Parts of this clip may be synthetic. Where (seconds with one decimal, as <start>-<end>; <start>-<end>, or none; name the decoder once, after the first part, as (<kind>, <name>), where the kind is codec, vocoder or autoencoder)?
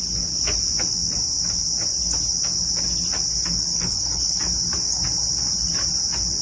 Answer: 3.7-4.4 (codec, HILCodec)